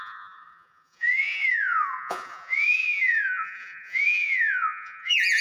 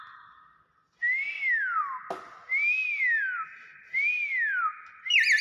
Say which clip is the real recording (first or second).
second